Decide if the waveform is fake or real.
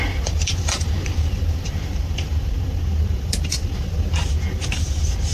fake